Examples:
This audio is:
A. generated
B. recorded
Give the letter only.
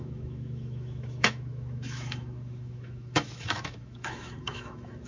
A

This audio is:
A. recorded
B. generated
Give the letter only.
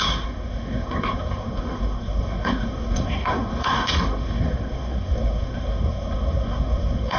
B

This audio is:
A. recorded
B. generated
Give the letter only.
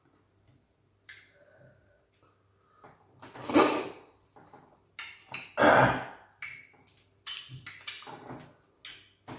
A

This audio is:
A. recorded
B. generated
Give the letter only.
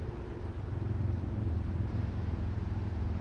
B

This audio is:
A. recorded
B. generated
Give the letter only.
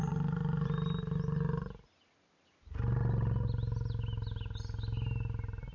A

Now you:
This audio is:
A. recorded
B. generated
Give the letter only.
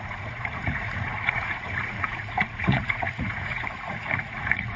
B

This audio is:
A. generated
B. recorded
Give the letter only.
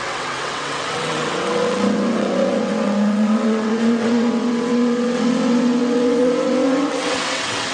A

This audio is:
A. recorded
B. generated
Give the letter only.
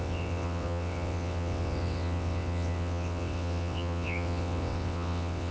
B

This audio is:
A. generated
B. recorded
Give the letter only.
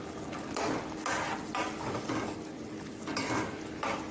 B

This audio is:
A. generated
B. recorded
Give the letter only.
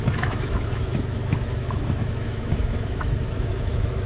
A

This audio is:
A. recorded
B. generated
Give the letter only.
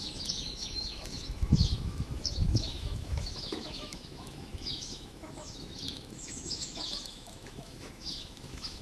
B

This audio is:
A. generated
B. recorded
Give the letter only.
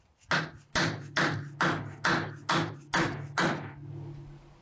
B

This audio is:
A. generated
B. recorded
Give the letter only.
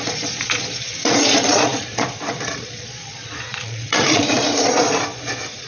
A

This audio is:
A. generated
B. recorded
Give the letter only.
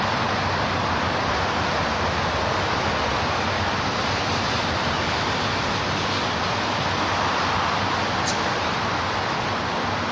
B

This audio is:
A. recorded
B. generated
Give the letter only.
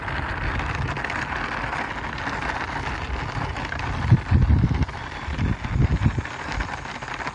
A